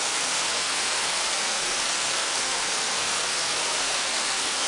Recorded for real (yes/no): no